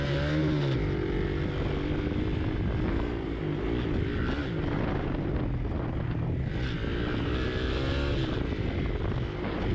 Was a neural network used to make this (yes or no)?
no